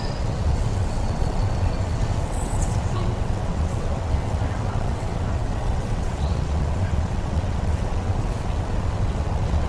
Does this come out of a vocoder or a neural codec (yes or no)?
yes